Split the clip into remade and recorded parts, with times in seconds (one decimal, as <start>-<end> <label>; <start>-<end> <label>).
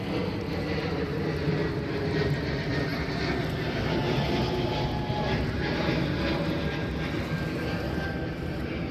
0.0-8.9 recorded